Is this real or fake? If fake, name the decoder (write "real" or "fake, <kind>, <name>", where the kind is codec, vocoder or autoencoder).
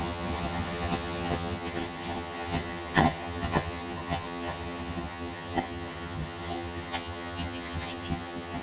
fake, vocoder, HiFi-GAN